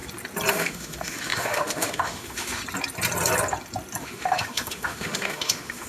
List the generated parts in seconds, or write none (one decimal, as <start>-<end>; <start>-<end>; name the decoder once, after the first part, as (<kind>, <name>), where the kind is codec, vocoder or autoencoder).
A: 0.5-2.6 (autoencoder, DAC-VAE); 4.0-5.9